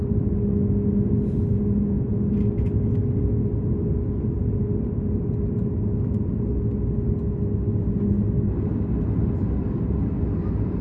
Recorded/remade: recorded